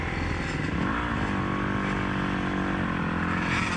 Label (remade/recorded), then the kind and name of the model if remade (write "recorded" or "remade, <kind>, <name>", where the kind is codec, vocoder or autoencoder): recorded